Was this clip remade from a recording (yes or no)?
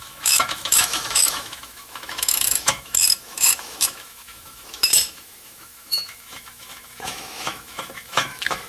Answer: yes